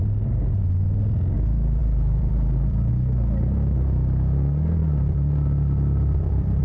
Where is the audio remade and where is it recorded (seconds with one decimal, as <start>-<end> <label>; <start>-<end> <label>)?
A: 0.0-1.8 recorded; 1.8-2.9 remade; 2.9-4.8 recorded; 4.8-6.6 remade